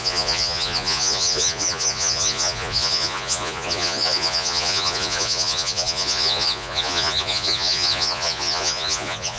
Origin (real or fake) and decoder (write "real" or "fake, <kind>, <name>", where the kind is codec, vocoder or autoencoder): fake, vocoder, Vocos